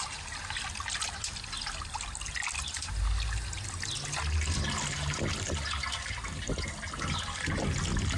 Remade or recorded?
recorded